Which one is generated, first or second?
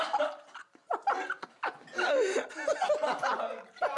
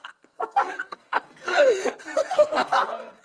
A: second